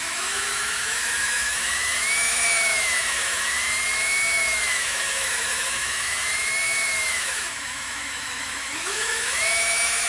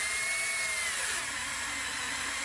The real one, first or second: second